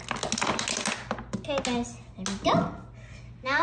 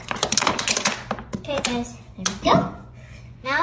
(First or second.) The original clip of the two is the first